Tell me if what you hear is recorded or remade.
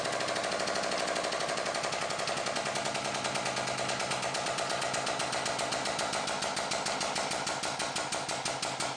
recorded